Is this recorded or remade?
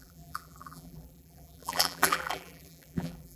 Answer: remade